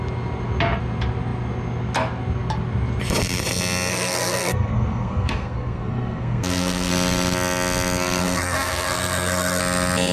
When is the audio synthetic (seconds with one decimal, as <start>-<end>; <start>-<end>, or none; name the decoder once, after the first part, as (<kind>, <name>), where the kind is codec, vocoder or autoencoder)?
3.9-6.9 (codec, SNAC); 8.2-9.6